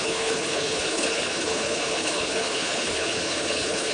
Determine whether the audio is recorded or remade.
remade